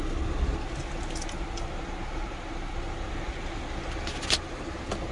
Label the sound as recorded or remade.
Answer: recorded